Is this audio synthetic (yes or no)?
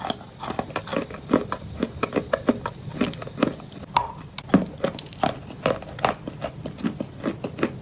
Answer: no